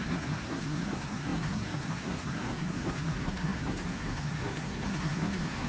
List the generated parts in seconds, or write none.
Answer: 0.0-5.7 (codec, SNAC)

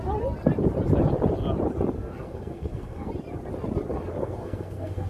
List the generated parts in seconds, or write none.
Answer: 2.0-3.1 (codec, SNAC); 4.2-5.1

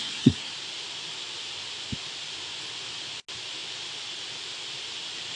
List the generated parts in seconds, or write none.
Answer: 0.0-0.5 (codec, SNAC)

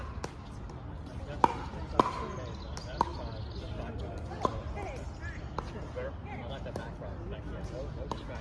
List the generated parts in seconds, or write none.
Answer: none

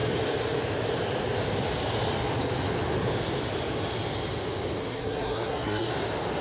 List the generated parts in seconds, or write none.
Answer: 4.8-5.9 (codec, SNAC)